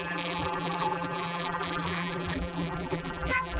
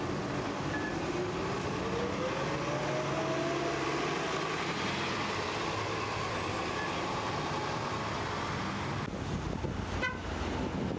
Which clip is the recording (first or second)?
second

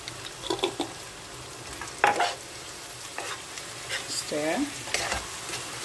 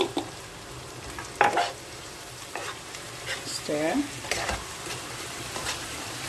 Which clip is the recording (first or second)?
first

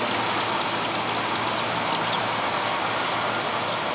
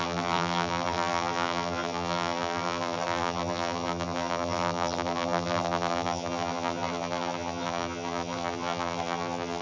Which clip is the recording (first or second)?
first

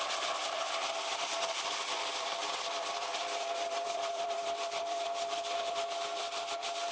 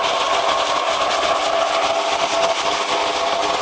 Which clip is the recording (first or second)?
second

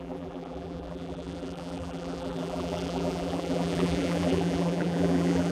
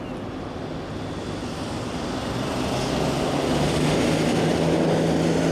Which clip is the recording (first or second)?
second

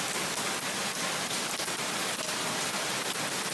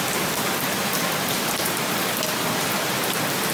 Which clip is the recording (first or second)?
first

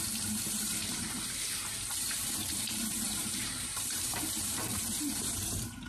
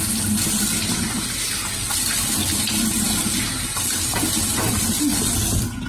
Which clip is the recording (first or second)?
second